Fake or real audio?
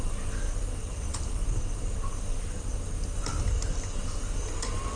fake